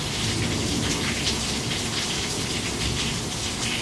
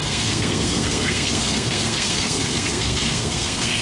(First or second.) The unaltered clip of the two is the first